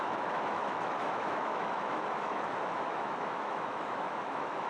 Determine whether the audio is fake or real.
fake